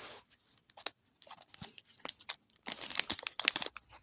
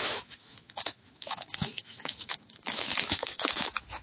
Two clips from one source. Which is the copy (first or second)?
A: second